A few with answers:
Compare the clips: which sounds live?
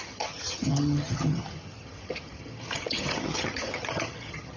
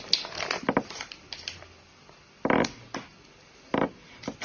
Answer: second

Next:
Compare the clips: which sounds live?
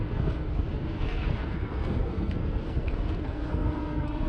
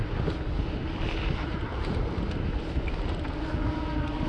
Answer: second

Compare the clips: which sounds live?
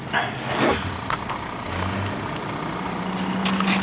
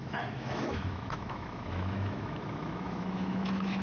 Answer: first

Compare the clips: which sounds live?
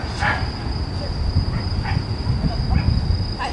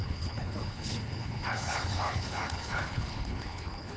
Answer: first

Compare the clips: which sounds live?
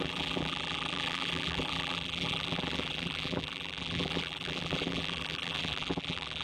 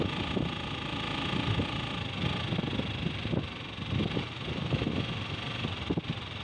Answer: second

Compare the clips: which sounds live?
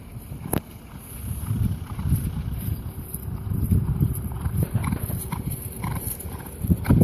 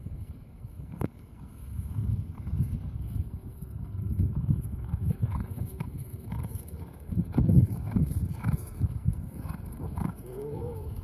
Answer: first